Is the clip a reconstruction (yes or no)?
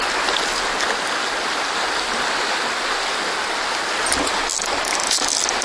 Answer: no